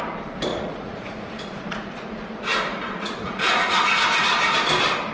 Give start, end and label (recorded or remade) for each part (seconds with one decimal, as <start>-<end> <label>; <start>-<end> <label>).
0.0-0.5 recorded; 0.5-2.1 remade; 2.1-2.7 recorded; 2.7-3.9 remade; 3.9-5.1 recorded

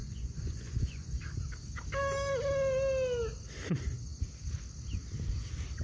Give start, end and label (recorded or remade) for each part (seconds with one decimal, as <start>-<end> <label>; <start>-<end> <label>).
0.0-1.2 remade; 1.2-5.8 recorded

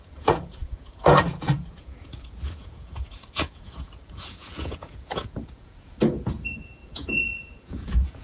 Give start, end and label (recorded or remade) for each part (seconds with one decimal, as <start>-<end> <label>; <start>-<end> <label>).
0.0-8.2 remade

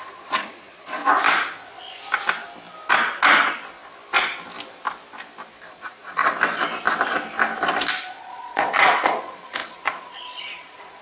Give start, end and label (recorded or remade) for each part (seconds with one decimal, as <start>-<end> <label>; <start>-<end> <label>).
0.0-1.0 remade; 1.0-5.7 recorded; 5.7-6.2 remade; 6.2-8.2 recorded; 8.2-11.0 remade

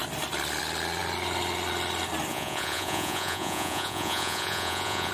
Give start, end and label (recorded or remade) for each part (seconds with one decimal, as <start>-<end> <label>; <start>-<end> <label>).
0.0-2.3 recorded; 2.3-5.1 remade

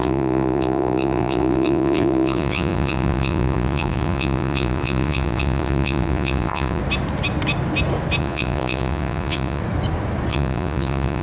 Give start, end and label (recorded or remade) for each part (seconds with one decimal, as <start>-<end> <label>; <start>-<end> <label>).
0.0-6.8 remade; 6.8-8.2 recorded; 8.2-9.6 remade; 9.6-10.3 recorded; 10.3-11.2 remade

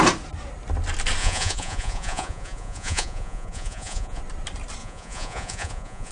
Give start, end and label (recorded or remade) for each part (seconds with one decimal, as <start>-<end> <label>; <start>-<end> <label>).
0.0-1.2 recorded; 1.2-4.2 remade; 4.2-4.8 recorded; 4.8-6.1 remade

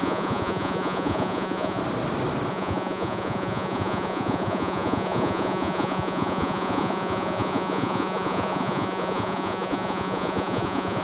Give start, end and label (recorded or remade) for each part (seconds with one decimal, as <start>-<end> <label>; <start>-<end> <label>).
0.0-1.8 remade; 1.8-2.5 recorded; 2.5-11.0 remade